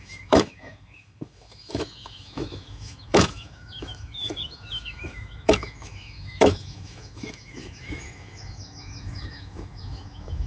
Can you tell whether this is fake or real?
fake